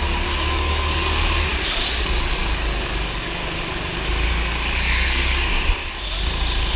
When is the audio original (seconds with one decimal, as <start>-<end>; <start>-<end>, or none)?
1.5-2.0; 3.4-4.3; 5.5-6.8